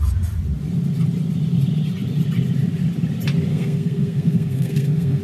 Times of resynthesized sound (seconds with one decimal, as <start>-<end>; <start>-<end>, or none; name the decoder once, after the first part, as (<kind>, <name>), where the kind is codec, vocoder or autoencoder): 3.5-5.2 (codec, SNAC)